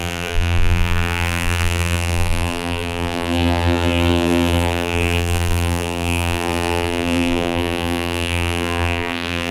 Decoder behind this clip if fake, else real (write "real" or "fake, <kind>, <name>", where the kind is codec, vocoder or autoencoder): fake, vocoder, BigVGAN v2